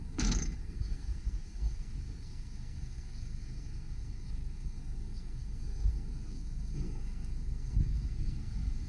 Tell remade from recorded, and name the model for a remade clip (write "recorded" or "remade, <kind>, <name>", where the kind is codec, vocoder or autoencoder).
remade, codec, SNAC